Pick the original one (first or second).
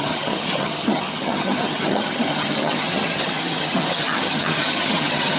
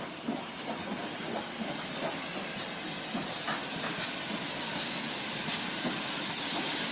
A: second